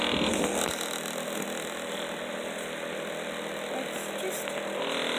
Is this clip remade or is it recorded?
recorded